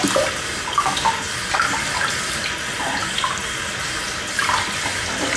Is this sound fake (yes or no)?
no